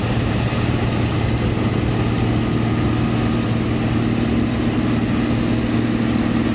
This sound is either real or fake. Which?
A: real